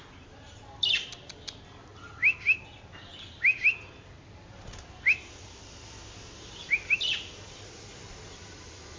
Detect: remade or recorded recorded